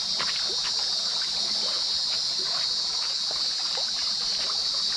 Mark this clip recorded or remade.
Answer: recorded